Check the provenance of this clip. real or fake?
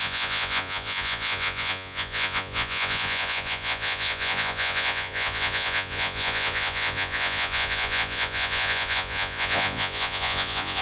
fake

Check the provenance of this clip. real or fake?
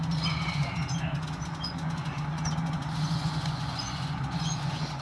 fake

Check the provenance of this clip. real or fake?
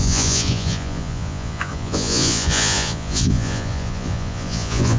fake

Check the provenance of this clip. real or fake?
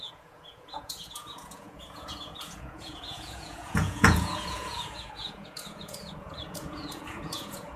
fake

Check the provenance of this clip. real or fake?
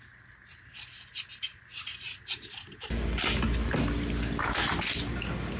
real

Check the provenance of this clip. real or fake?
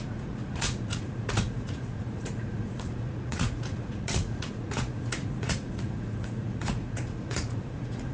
fake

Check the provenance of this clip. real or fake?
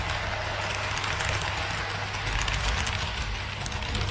real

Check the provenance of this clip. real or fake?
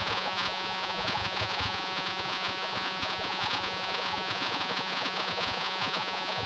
fake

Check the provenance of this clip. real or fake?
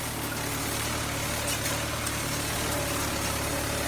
real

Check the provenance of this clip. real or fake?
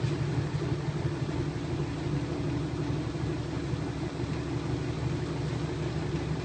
real